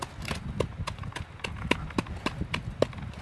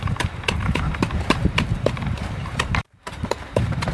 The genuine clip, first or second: first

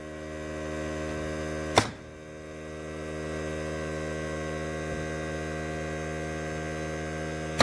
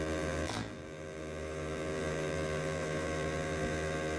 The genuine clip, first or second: first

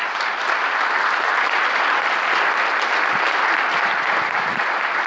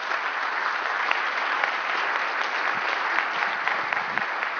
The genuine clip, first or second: second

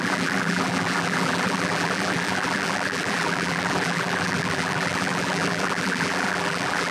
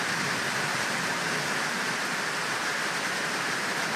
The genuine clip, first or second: second